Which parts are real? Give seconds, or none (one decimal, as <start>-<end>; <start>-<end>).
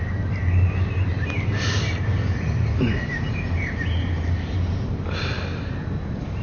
0.0-1.1; 4.9-6.4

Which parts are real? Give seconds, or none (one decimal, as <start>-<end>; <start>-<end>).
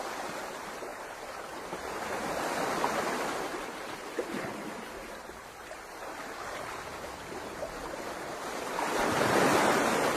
0.9-3.4; 6.9-8.6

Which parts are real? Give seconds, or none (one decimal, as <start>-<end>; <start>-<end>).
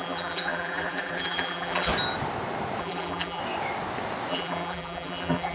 1.9-2.8; 3.4-4.3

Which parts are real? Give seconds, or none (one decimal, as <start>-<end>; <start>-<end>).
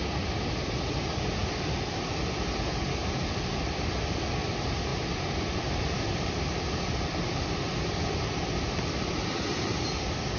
0.0-1.4; 2.4-3.0; 3.8-4.9; 9.8-10.4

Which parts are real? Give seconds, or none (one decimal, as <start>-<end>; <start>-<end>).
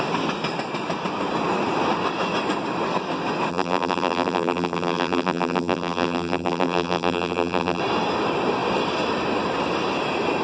0.0-3.5; 7.8-10.4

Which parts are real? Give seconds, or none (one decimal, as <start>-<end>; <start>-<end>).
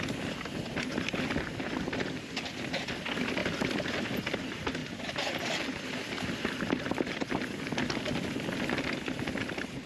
0.0-3.4; 4.0-9.9